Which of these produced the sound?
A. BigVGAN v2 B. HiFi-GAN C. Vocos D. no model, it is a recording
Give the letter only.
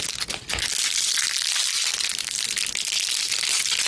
D